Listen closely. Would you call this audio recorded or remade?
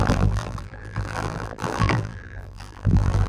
remade